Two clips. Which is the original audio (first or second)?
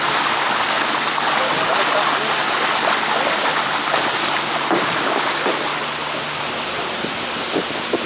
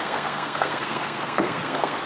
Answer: first